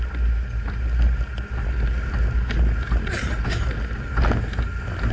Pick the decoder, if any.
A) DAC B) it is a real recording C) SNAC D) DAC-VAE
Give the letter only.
B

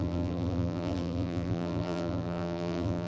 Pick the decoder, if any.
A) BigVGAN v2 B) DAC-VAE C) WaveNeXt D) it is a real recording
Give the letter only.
A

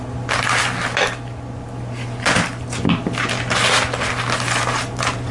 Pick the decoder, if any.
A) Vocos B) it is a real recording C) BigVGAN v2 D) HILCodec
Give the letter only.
B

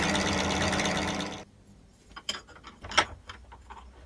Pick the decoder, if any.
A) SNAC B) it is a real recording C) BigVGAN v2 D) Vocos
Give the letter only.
C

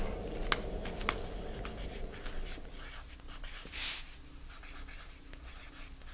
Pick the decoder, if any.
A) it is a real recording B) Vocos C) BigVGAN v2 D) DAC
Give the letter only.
A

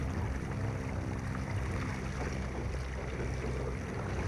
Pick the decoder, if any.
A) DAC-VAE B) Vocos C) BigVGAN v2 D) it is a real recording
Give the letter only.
D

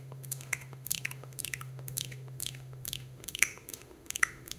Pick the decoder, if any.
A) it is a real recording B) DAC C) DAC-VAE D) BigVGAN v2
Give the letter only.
C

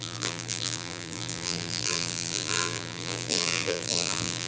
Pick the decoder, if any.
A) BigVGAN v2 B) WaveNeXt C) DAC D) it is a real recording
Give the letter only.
A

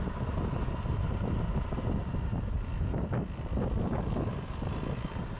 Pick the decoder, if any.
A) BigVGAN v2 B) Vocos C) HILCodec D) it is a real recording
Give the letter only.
D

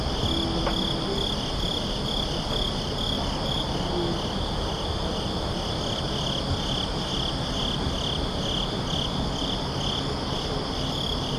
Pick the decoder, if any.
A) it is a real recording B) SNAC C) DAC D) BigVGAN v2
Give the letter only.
A